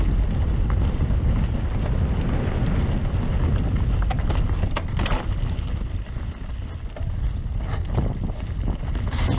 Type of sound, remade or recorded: recorded